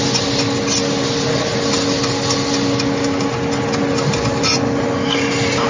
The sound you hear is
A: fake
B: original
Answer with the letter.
B